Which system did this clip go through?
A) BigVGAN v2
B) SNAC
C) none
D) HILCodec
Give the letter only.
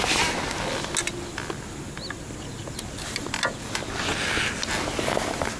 C